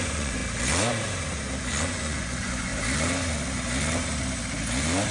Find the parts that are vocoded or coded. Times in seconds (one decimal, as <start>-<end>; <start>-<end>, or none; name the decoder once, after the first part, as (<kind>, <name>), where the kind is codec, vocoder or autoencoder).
0.0-0.4 (vocoder, Vocos); 1.6-2.7